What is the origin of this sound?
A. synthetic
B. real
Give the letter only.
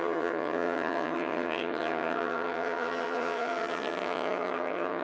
A